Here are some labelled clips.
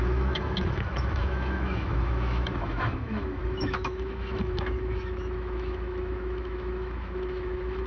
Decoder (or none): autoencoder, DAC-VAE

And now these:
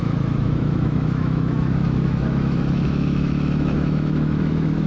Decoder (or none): autoencoder, DAC-VAE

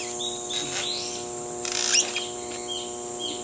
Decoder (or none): none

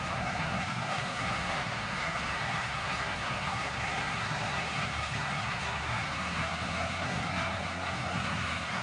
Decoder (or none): codec, SNAC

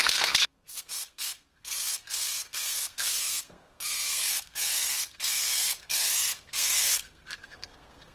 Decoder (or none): codec, SNAC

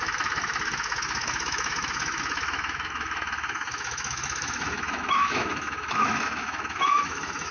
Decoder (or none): autoencoder, DAC-VAE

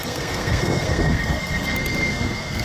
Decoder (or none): codec, SNAC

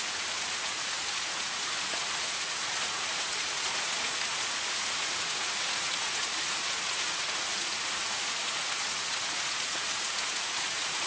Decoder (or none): vocoder, Vocos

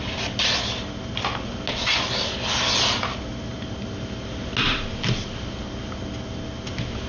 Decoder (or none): none